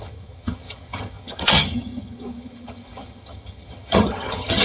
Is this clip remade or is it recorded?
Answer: remade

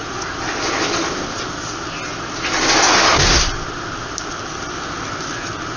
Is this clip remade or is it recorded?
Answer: recorded